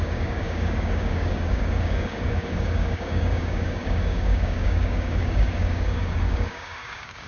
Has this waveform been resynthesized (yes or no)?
yes